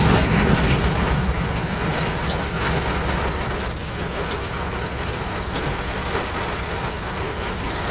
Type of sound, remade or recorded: recorded